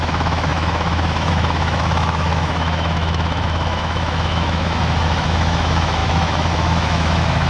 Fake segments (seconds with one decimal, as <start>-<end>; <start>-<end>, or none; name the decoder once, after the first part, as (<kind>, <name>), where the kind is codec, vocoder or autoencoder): 0.0-7.5 (autoencoder, DAC-VAE)